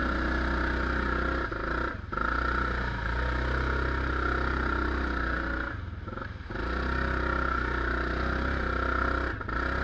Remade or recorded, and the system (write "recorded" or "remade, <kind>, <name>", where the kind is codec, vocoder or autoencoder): recorded